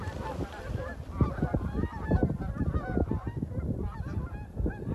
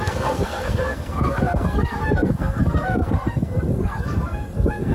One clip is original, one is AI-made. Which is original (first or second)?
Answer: first